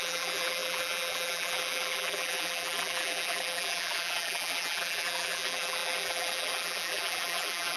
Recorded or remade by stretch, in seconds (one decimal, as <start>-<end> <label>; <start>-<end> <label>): 0.0-7.8 remade